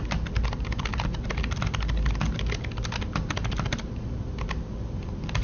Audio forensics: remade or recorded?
recorded